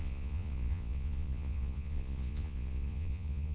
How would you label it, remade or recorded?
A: remade